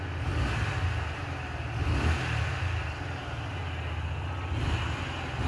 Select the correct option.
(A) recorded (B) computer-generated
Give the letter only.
A